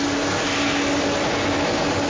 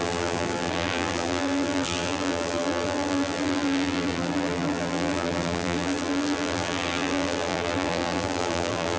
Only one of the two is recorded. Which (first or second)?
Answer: first